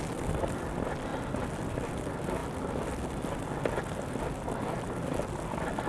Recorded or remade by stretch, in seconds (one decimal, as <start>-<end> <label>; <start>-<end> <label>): 0.0-5.9 recorded